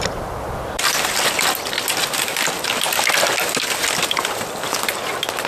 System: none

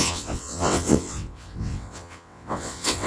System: vocoder, WaveNeXt